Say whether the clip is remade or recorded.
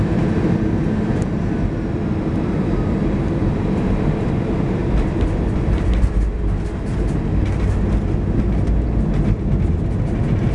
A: recorded